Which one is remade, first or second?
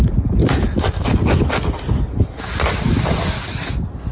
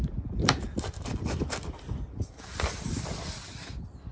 second